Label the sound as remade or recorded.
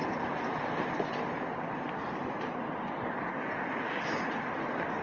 recorded